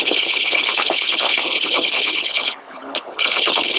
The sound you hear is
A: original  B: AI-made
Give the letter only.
B